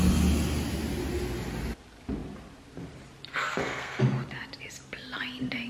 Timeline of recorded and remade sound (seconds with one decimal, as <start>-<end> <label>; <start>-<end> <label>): 0.0-3.3 recorded; 3.3-4.0 remade; 4.0-5.7 recorded